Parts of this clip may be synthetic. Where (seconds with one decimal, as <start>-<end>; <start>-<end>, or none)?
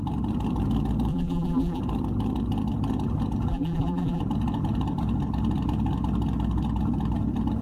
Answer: 1.1-1.8; 3.5-4.2